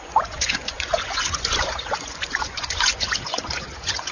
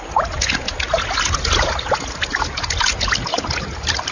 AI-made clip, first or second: first